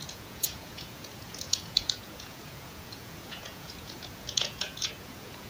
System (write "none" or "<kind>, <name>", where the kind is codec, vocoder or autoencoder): vocoder, Vocos